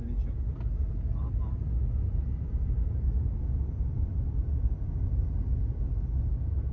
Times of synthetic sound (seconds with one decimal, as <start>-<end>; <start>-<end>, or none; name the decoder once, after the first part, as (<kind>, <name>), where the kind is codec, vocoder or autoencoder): 2.3-3.3 (vocoder, BigVGAN v2)